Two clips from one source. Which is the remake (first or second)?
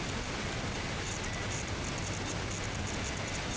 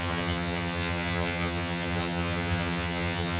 second